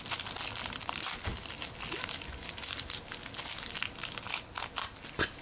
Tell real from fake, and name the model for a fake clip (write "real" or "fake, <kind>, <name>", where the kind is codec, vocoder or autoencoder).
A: real